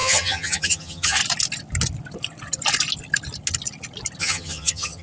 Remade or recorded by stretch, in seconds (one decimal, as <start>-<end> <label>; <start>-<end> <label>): 0.0-1.2 remade; 1.2-4.2 recorded; 4.2-5.0 remade